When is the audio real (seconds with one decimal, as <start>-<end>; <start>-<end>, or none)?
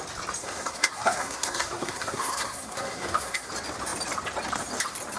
0.0-0.4; 3.5-5.2